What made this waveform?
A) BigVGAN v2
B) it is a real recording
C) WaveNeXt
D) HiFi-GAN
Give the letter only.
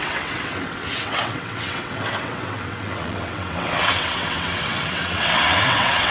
C